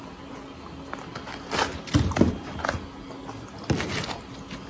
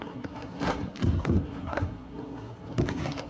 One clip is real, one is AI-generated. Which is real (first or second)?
first